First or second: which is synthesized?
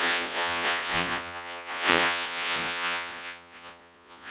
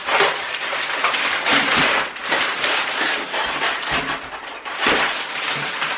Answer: first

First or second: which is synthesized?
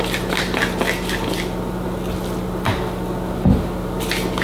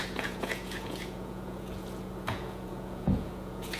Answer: second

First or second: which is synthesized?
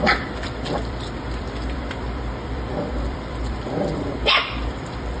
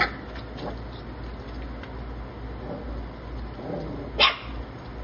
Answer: first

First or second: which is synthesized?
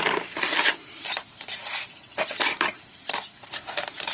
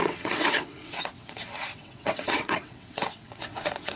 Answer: second